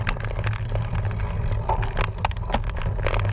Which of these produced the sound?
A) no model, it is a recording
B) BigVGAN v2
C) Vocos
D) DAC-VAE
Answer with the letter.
A